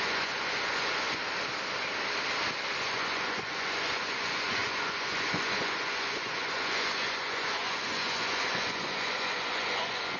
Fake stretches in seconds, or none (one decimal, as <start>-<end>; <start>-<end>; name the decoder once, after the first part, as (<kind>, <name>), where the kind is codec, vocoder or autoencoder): 0.0-1.2 (vocoder, Vocos); 2.8-10.2